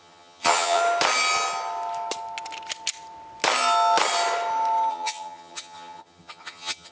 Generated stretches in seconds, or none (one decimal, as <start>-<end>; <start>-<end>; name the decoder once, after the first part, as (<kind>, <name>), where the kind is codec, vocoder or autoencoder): 0.0-0.8 (vocoder, HiFi-GAN); 4.9-6.9